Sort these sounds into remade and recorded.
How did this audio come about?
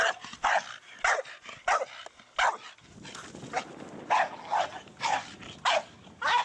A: recorded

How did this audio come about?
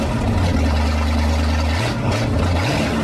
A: recorded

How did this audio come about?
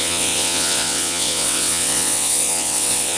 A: remade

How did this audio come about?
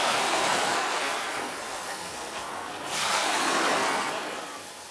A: remade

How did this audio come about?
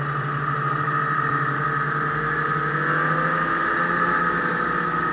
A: recorded